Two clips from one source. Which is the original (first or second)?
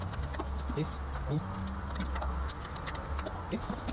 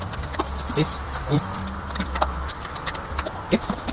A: first